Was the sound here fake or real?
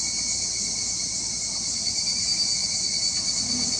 real